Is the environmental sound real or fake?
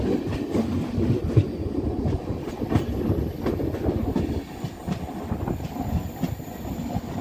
real